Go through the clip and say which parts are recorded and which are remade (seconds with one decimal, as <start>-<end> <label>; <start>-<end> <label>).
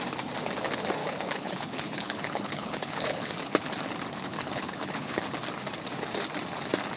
0.0-1.0 recorded; 1.0-3.3 remade; 3.3-4.3 recorded; 4.3-5.3 remade; 5.3-7.0 recorded